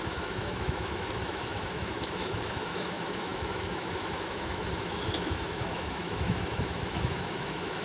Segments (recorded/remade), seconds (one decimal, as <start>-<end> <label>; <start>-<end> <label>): 0.0-7.8 remade